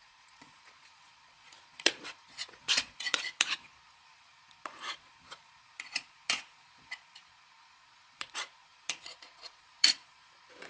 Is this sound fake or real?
fake